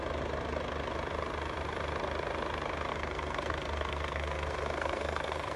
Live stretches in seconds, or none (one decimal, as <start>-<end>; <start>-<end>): 0.0-2.9